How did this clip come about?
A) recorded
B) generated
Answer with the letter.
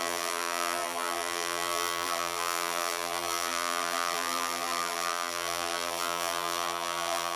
B